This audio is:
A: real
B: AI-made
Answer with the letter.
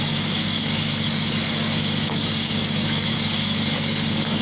B